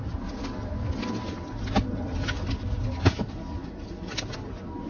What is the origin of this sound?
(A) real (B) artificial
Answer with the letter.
A